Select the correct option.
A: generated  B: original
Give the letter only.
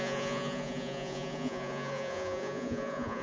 A